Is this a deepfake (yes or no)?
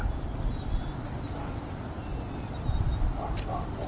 no